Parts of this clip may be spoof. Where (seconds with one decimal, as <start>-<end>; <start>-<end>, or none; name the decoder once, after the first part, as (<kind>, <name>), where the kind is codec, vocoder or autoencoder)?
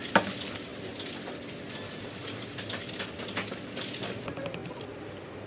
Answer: none